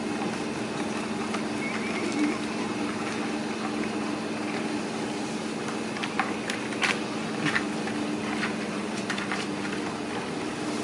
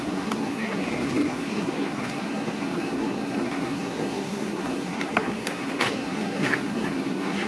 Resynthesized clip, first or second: second